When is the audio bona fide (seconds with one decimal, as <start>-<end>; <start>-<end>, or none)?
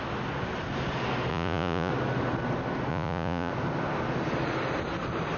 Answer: 0.0-1.3; 1.9-2.9; 3.5-5.4